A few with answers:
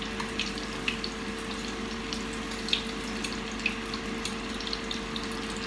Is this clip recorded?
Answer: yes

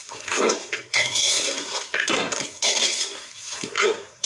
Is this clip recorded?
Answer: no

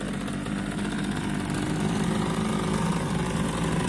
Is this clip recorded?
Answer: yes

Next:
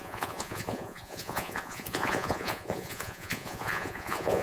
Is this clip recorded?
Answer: no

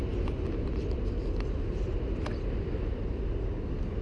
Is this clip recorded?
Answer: yes